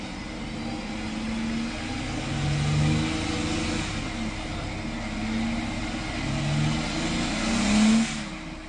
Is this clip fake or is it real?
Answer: real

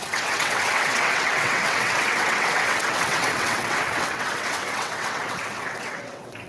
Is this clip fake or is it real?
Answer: fake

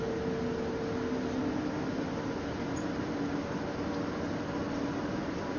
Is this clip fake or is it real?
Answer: real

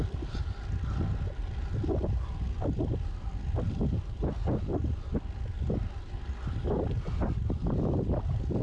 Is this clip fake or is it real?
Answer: real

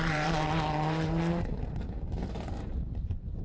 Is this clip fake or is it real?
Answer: fake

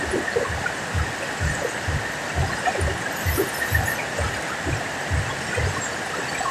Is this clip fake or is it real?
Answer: real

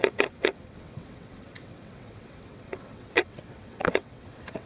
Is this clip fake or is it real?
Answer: fake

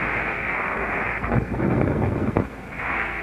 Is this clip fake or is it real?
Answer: fake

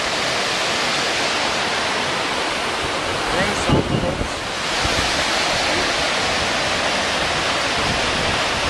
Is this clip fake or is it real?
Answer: real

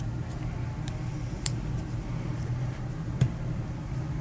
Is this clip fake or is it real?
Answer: fake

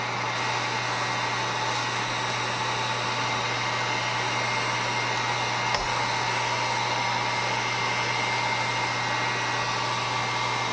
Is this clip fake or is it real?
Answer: real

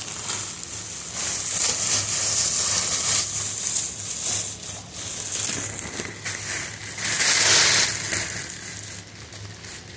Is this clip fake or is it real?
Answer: real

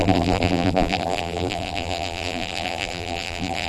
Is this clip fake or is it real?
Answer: fake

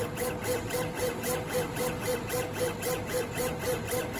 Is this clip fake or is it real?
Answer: real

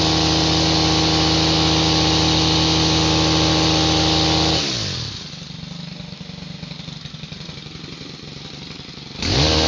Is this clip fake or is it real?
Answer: real